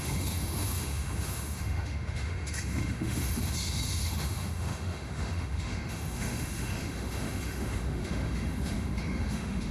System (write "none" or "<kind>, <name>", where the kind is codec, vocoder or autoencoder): autoencoder, DAC-VAE